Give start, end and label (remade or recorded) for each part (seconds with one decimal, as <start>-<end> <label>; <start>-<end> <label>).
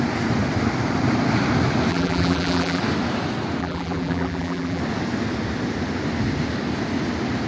0.0-1.9 recorded; 1.9-2.8 remade; 2.8-3.6 recorded; 3.6-4.8 remade; 4.8-7.5 recorded